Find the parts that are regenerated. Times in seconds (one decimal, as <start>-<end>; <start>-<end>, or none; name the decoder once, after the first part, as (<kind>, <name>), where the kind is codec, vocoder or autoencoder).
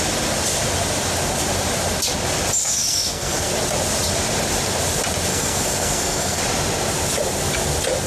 2.6-3.5 (codec, SNAC); 5.3-6.4